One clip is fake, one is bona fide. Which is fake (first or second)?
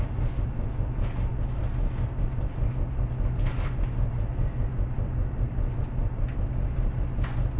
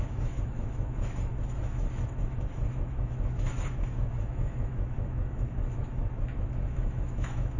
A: second